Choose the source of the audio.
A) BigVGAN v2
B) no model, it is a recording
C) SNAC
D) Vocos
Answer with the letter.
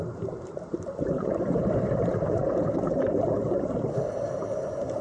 A